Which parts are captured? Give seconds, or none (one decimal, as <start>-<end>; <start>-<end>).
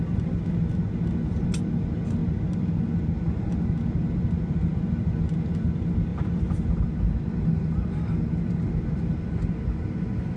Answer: 0.0-10.4